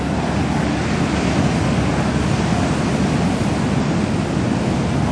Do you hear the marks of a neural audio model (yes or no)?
no